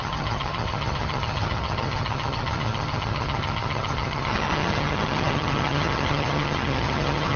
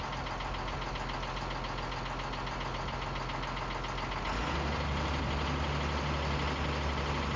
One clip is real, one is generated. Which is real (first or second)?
second